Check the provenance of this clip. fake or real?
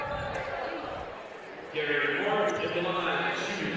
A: real